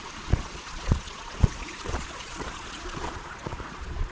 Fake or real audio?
fake